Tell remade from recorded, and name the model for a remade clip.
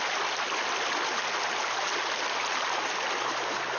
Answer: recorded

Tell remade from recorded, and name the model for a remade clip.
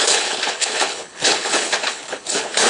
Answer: remade, codec, HILCodec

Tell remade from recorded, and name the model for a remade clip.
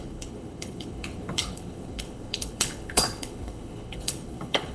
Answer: remade, codec, HILCodec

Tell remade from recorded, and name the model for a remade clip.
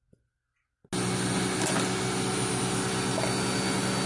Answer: recorded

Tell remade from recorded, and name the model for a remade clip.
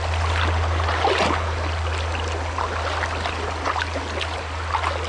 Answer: recorded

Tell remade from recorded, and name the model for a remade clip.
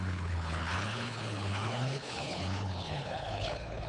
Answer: remade, codec, HILCodec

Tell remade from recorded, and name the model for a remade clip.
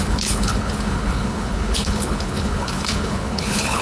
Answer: remade, codec, HILCodec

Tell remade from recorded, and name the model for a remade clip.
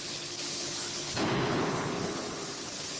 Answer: remade, codec, HILCodec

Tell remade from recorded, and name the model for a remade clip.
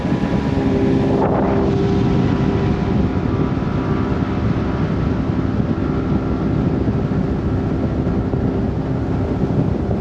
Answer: recorded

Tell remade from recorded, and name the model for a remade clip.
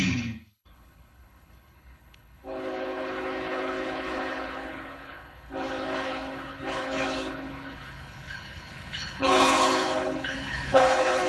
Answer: remade, codec, HILCodec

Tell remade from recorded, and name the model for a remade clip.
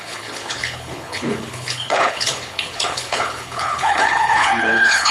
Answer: remade, codec, HILCodec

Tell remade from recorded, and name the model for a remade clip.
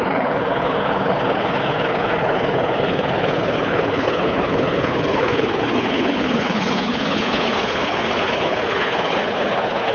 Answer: remade, codec, HILCodec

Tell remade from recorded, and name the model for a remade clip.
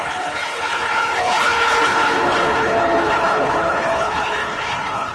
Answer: remade, codec, HILCodec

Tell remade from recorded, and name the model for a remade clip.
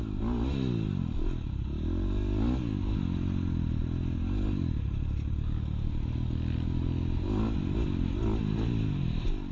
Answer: recorded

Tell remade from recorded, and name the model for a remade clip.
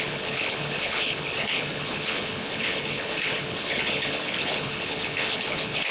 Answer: remade, codec, HILCodec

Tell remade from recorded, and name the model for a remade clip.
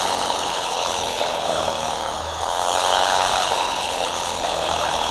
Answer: remade, codec, HILCodec